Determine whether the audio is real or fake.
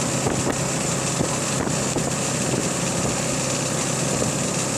real